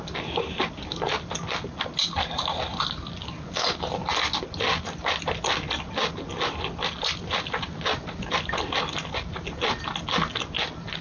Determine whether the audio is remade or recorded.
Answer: recorded